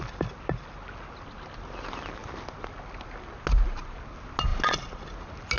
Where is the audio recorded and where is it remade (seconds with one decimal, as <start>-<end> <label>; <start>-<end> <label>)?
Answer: 0.0-5.6 recorded